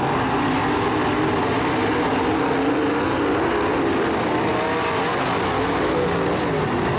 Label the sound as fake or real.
real